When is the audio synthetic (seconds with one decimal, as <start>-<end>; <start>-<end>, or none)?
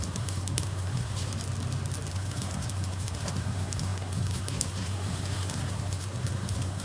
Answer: 0.0-1.3; 2.1-6.8